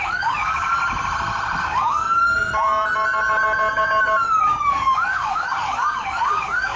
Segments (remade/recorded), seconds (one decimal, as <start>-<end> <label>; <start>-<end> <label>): 0.0-0.8 remade; 0.8-1.6 recorded; 1.6-2.2 remade; 2.2-4.7 recorded; 4.7-6.8 remade